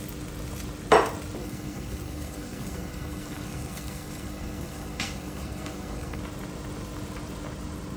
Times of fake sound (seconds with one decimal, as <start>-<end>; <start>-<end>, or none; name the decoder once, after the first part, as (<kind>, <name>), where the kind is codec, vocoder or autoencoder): 1.4-6.2 (codec, SNAC)